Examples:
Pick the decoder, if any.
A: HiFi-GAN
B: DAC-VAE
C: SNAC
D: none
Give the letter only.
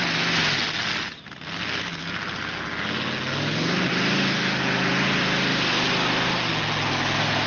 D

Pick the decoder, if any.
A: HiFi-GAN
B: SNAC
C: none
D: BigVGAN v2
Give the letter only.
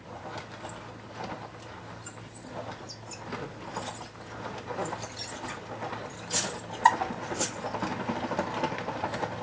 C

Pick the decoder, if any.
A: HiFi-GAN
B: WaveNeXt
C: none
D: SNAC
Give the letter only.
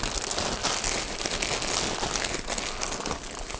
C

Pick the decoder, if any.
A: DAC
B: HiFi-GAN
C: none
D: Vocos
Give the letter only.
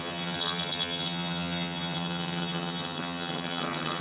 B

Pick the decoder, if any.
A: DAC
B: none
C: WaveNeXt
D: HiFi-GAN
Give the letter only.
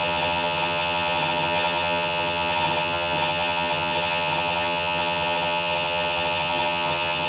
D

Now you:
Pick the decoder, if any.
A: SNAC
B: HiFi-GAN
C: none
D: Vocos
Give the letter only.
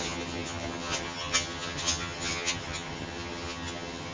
B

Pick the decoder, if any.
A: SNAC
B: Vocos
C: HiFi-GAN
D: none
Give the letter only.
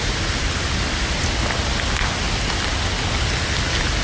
D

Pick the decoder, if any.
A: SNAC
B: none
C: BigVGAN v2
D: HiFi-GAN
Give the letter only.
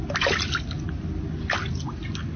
B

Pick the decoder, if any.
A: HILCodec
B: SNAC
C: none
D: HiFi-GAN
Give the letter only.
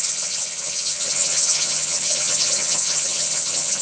D